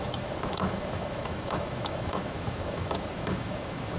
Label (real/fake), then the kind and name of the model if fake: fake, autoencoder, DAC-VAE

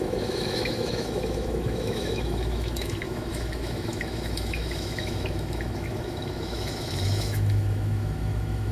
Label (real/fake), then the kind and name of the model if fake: fake, autoencoder, DAC-VAE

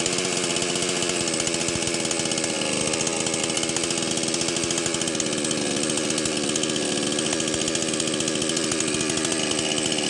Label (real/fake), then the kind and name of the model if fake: real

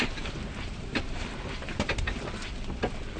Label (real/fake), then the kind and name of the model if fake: real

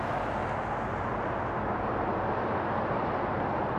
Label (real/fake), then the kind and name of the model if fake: real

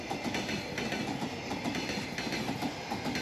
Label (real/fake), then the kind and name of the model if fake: real